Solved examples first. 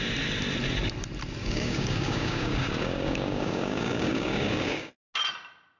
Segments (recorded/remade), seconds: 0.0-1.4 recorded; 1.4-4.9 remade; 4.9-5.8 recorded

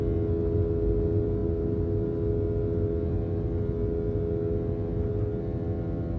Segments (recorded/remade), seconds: 0.0-6.2 recorded

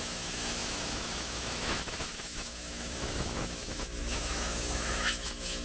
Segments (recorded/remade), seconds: 0.0-5.6 remade